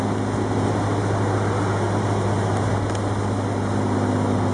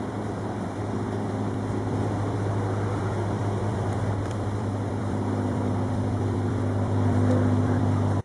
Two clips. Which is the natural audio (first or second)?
first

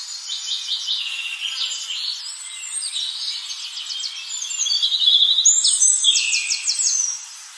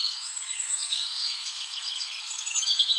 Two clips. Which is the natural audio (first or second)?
first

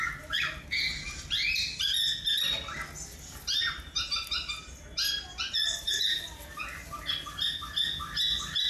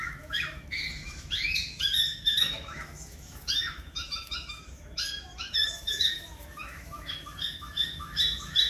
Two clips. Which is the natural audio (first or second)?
first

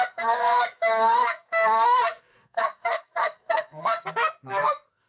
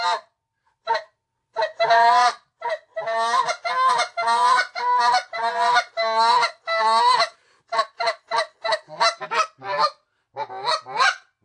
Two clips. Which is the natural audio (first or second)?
second